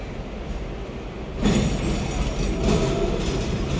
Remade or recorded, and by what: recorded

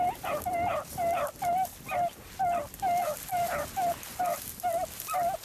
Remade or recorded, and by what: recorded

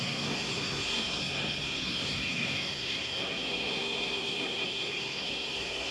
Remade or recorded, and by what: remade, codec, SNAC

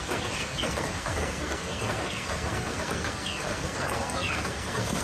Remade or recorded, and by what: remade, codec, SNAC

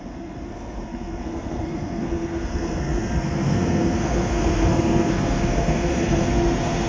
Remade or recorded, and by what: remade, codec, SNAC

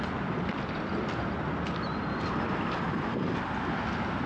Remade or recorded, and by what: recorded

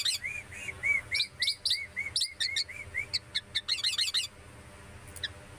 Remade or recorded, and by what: recorded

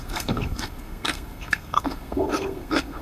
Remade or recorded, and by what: remade, codec, SNAC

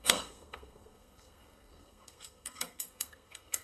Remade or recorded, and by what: remade, codec, SNAC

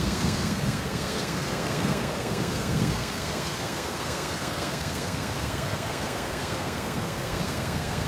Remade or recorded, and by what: remade, codec, SNAC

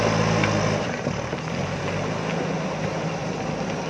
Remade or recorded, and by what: recorded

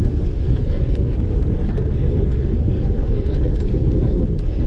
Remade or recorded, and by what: remade, codec, SNAC